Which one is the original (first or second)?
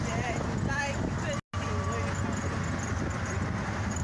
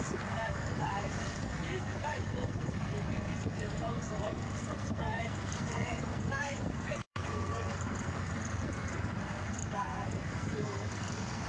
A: first